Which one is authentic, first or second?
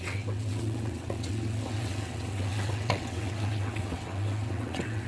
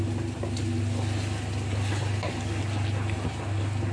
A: second